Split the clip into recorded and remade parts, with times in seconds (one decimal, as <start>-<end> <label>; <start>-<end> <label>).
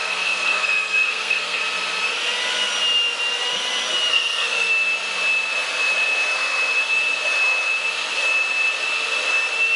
0.0-1.6 remade; 1.6-4.1 recorded; 4.1-4.7 remade; 4.7-9.8 recorded